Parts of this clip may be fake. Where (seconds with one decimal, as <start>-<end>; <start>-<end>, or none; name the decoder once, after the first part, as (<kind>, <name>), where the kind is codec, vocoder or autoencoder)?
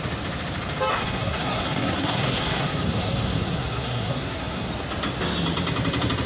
0.9-4.7 (codec, SNAC)